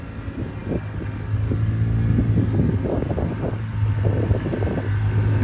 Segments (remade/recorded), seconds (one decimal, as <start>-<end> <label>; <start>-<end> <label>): 0.0-5.4 recorded